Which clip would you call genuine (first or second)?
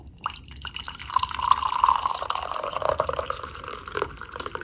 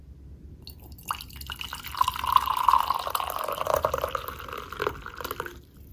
second